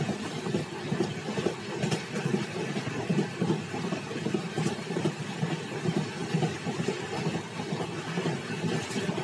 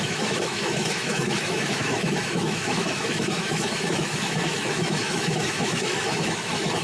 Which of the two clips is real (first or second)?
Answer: first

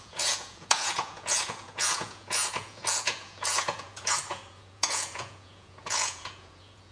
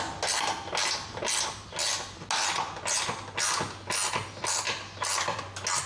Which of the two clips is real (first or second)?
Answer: second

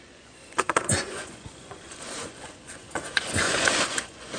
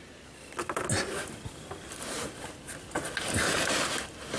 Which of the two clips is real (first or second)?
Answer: second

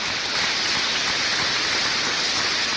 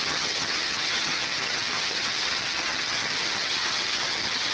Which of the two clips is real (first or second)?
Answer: first